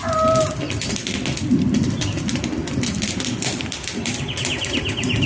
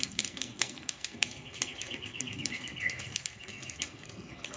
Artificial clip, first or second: second